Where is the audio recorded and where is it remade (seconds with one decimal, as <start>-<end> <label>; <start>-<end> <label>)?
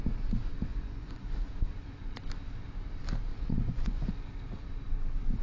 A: 0.0-0.7 recorded; 0.7-1.5 remade; 1.5-3.3 recorded; 3.3-4.1 remade; 4.1-5.4 recorded